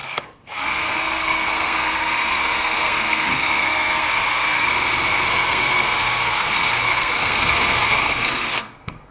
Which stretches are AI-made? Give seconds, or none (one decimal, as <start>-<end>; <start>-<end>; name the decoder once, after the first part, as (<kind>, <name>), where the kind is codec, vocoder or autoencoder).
0.0-4.7 (codec, SNAC); 5.3-9.1